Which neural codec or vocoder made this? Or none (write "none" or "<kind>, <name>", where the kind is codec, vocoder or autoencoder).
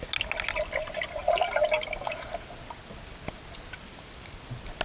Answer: none